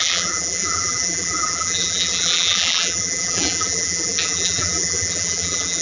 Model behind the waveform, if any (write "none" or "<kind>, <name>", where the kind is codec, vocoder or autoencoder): vocoder, BigVGAN v2